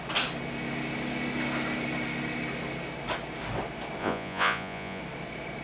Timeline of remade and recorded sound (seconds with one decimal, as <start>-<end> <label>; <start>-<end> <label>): 0.0-4.0 recorded; 4.0-5.0 remade; 5.0-5.6 recorded